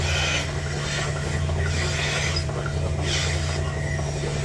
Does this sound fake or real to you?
real